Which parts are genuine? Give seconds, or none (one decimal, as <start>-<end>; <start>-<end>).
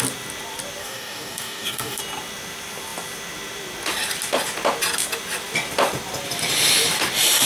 0.0-0.8; 2.0-7.5